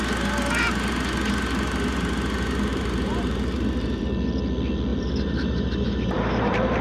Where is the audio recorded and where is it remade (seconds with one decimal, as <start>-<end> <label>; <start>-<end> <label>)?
0.0-2.7 recorded; 2.7-4.0 remade; 4.0-4.9 recorded; 4.9-6.8 remade